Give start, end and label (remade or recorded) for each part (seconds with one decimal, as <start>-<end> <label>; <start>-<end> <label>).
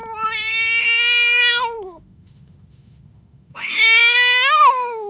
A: 0.0-0.8 recorded; 0.8-5.1 remade